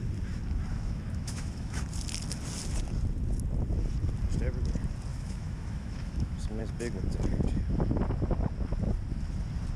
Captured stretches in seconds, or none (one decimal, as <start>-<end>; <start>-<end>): 0.0-0.7; 1.8-5.1; 6.6-9.8